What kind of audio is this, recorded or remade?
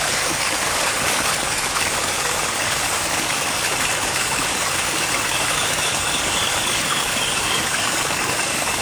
remade